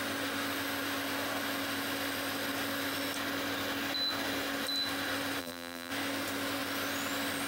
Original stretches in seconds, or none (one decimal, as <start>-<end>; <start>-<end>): 0.0-5.4; 5.9-7.5